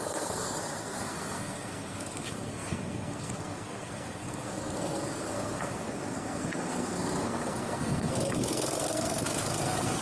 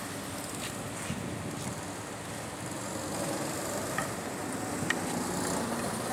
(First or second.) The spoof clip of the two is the first